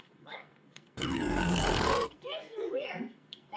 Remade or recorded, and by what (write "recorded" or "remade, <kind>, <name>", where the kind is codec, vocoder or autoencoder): remade, codec, SNAC